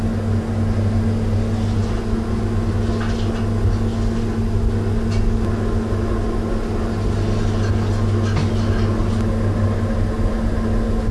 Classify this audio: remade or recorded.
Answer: recorded